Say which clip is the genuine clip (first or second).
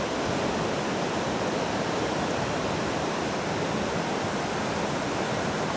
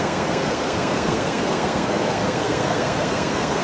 first